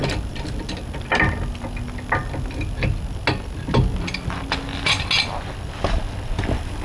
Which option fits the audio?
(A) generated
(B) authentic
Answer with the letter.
B